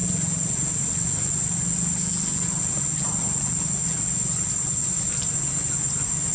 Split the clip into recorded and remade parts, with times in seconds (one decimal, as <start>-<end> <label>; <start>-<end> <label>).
0.0-6.3 recorded